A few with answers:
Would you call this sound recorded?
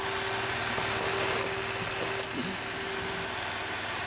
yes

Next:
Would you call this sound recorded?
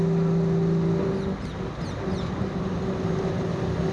yes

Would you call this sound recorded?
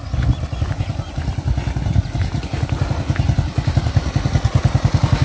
yes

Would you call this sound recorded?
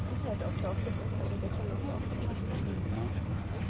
yes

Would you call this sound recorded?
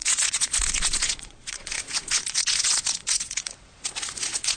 no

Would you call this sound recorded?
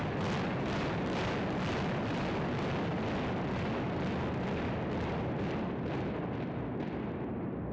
yes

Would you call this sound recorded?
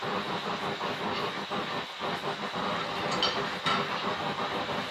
yes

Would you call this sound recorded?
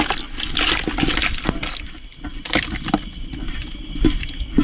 yes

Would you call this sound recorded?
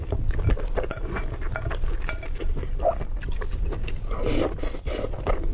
yes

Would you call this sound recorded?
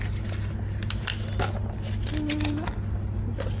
yes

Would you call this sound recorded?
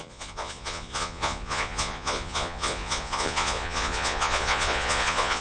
no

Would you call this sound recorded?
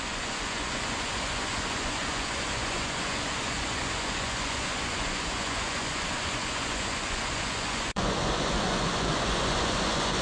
no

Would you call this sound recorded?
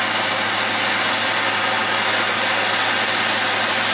yes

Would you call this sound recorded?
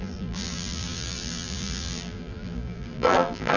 no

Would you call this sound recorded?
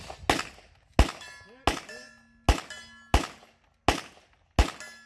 yes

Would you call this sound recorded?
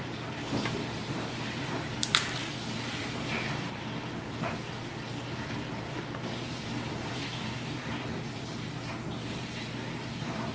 no